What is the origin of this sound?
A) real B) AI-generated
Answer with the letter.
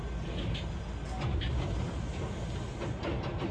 A